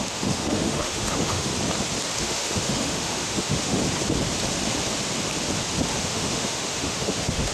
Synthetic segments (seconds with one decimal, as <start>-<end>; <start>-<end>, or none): 0.0-1.5; 2.2-3.8; 6.0-7.5